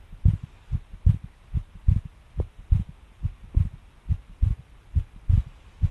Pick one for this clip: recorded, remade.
recorded